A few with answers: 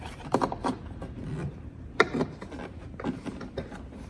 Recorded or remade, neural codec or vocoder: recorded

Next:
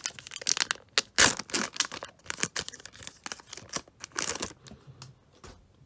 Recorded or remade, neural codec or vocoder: recorded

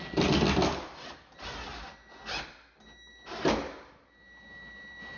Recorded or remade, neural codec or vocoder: recorded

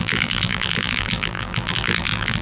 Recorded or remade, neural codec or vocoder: remade, vocoder, BigVGAN v2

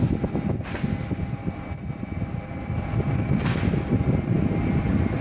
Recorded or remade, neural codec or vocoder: recorded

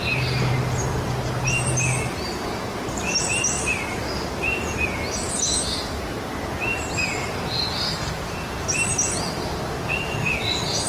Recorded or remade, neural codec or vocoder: recorded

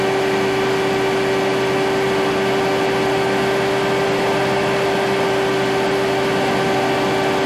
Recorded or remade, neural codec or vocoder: recorded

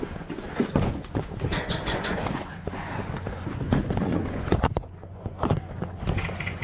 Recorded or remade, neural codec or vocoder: remade, vocoder, Vocos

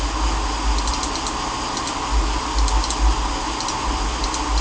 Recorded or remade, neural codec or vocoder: recorded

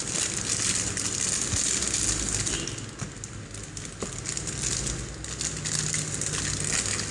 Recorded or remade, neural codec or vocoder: recorded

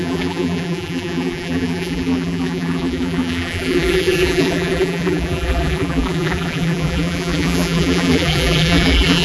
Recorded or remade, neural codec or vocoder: remade, vocoder, BigVGAN v2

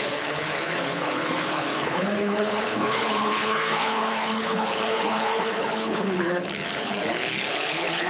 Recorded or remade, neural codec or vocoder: remade, codec, HILCodec